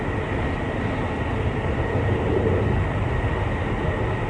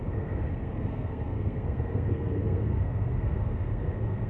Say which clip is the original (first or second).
first